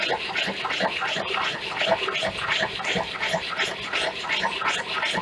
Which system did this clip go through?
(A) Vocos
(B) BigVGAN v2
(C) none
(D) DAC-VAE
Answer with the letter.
C